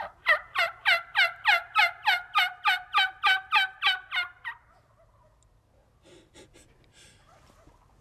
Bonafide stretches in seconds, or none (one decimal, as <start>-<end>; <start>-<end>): 0.0-8.0